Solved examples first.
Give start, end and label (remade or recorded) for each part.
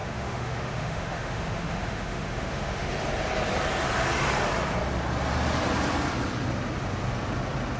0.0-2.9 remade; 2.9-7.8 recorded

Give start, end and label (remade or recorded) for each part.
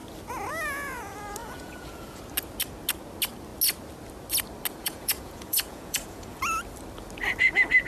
0.0-1.4 recorded; 1.4-2.2 remade; 2.2-4.8 recorded; 4.8-6.4 remade; 6.4-7.9 recorded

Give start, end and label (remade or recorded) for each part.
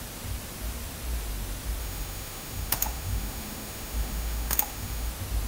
0.0-1.8 recorded; 1.8-5.1 remade; 5.1-5.5 recorded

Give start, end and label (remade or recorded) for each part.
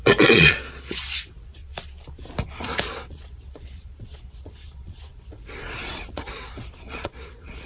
0.0-1.6 remade; 1.6-2.6 recorded; 2.6-7.7 remade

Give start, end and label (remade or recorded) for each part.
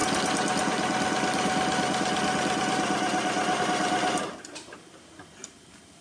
0.0-6.0 recorded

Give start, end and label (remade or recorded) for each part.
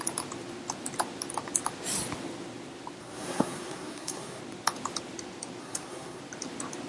0.0-3.0 recorded; 3.0-4.4 remade; 4.4-5.6 recorded; 5.6-6.2 remade; 6.2-6.9 recorded